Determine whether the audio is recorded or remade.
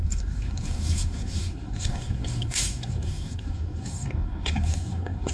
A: remade